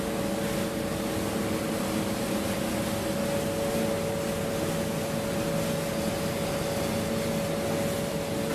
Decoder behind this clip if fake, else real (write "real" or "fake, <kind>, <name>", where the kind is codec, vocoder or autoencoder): real